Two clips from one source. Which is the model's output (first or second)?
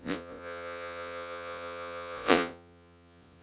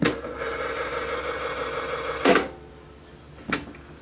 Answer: first